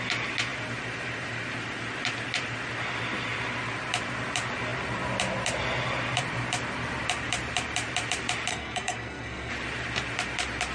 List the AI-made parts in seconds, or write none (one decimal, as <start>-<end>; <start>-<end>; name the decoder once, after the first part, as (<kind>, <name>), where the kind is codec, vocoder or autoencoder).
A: 8.5-9.5 (codec, SNAC)